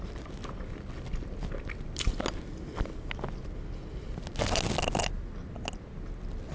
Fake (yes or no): no